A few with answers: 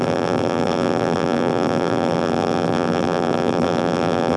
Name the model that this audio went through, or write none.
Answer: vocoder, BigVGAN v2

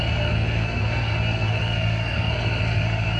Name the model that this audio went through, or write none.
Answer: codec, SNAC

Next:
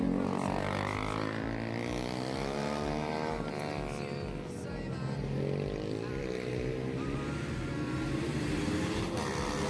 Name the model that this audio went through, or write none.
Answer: none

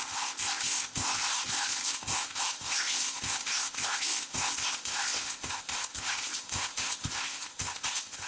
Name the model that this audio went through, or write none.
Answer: codec, ZipCodec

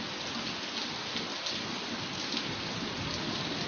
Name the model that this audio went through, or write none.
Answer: none